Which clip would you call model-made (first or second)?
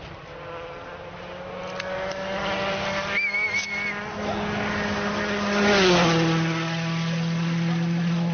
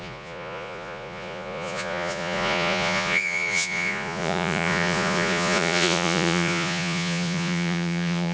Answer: second